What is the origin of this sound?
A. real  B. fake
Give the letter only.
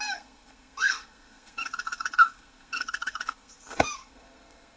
B